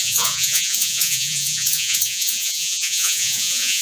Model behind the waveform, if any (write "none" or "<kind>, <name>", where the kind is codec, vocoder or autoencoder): vocoder, Vocos